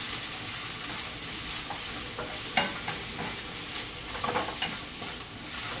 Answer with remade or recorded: recorded